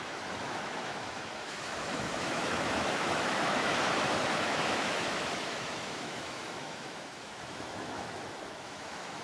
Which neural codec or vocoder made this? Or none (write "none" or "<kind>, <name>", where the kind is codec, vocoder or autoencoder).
autoencoder, DAC-VAE